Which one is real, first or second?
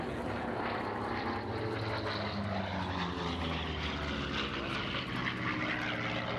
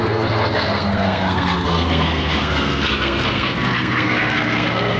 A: first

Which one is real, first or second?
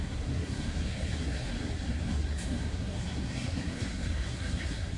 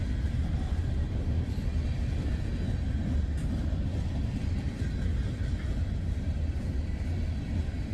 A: second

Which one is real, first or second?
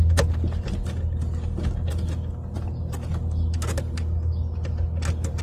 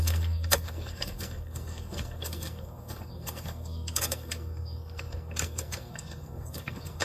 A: first